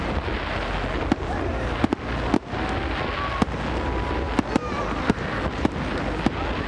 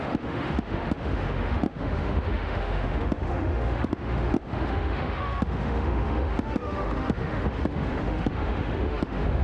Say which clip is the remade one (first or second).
second